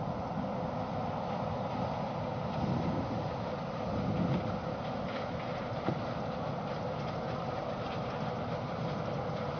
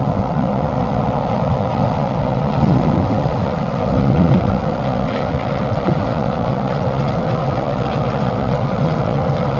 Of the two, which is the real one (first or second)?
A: first